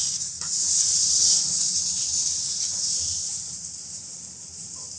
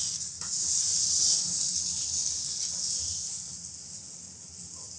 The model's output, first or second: first